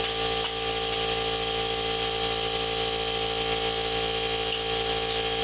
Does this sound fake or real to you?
real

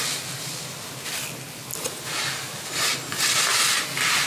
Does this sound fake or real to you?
real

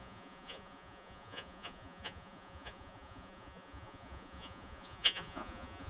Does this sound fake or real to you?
fake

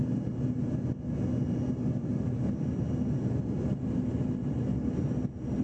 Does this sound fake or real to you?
real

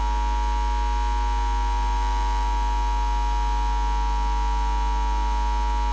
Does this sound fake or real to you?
real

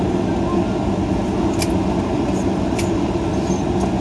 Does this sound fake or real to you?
real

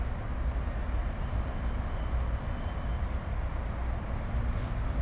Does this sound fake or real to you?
real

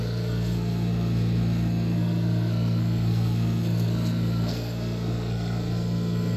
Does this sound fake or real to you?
fake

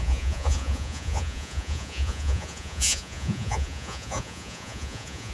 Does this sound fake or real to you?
fake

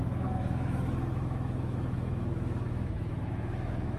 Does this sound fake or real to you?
fake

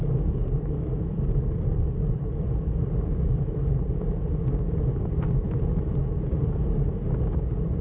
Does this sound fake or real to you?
real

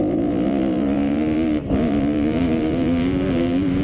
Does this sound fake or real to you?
fake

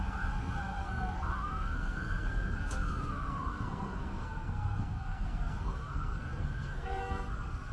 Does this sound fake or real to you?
fake